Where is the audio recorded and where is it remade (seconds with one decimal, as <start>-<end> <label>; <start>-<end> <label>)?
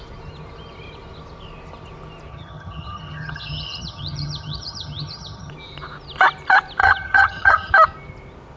0.0-2.3 recorded; 2.3-5.5 remade; 5.5-6.8 recorded; 6.8-7.7 remade; 7.7-8.6 recorded